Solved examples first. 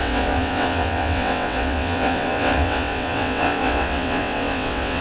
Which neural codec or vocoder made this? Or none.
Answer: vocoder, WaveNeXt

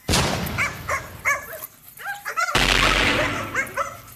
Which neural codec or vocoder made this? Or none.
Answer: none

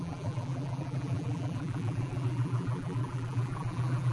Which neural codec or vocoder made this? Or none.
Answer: vocoder, BigVGAN v2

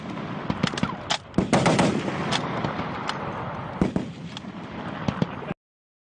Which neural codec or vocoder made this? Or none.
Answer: none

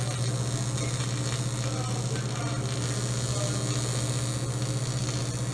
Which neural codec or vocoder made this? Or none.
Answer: none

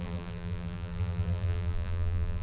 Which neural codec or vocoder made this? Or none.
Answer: vocoder, BigVGAN v2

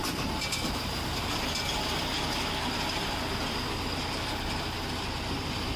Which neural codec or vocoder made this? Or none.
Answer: none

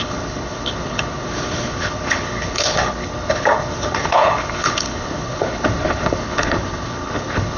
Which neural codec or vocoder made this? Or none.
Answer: codec, HILCodec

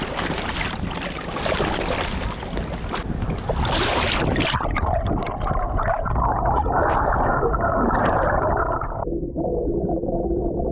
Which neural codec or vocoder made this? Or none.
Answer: none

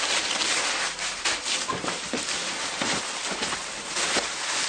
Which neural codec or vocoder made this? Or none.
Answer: none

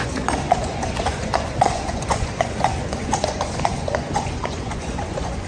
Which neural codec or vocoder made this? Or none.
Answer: vocoder, Vocos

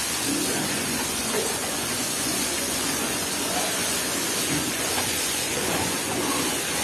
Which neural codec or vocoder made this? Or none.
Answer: vocoder, Vocos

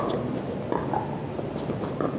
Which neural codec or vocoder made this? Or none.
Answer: none